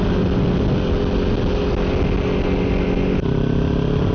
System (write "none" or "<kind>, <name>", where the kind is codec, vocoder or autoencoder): none